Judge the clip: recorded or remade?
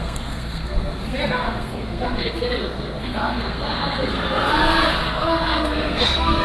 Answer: remade